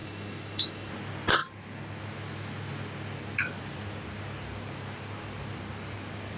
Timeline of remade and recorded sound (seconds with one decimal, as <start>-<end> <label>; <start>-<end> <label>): 0.0-0.9 remade; 0.9-6.4 recorded